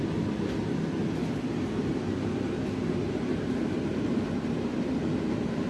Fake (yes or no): no